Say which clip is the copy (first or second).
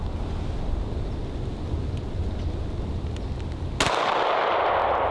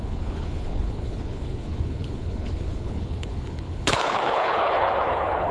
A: second